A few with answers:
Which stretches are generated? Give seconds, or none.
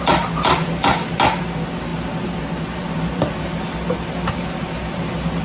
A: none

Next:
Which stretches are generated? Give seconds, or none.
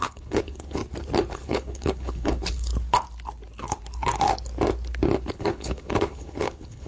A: 0.0-0.8 (codec, HILCodec); 1.3-2.7; 5.3-6.9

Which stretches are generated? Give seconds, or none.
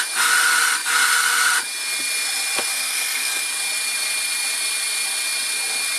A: 2.7-3.4 (codec, SNAC)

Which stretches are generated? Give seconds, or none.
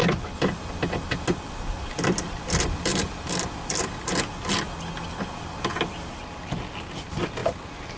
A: 0.0-0.7 (vocoder, BigVGAN v2); 2.9-4.0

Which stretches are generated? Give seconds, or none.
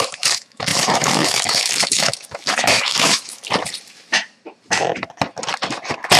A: 0.0-3.4 (autoencoder, DAC-VAE)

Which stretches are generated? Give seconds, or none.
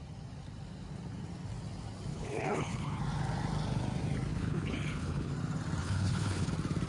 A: 2.1-3.0 (codec, HILCodec); 4.3-5.3; 5.8-6.5